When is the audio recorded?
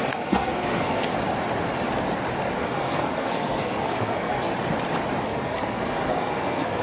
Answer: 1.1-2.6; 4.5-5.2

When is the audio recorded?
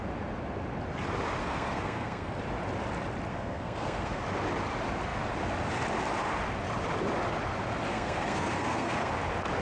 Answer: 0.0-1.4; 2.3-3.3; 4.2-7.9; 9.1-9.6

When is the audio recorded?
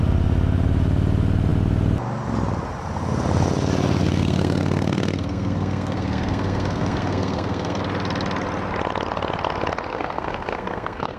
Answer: 0.0-4.0; 7.8-9.9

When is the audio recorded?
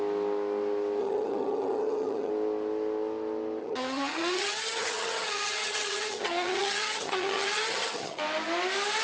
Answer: 0.0-1.0; 2.3-3.6; 8.2-9.0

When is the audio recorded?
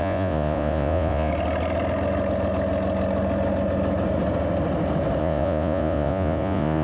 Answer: 1.3-5.2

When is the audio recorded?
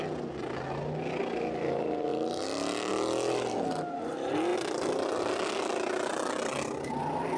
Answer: 0.0-7.4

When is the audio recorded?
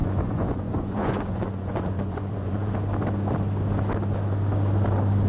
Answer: 2.7-5.3